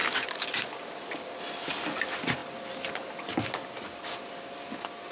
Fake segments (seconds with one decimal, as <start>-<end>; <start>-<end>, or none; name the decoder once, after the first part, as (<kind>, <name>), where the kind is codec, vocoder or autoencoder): none